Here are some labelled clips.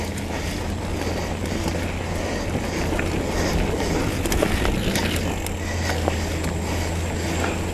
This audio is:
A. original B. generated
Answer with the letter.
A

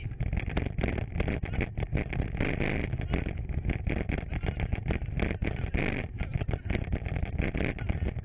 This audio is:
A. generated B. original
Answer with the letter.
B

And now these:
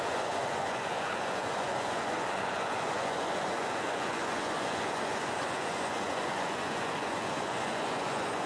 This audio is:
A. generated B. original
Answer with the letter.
A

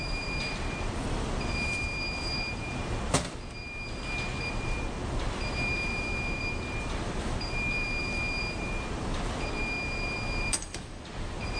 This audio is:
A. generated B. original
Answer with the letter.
A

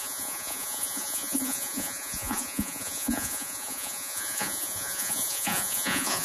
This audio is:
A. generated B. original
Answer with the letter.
A